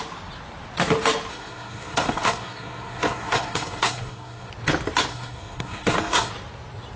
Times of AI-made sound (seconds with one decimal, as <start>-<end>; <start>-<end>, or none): 1.3-4.5; 5.1-6.3